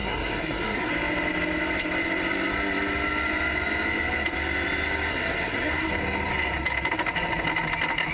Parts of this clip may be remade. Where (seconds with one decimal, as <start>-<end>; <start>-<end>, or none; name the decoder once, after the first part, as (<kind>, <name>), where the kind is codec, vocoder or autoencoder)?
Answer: 0.0-0.9 (codec, SNAC); 5.1-5.9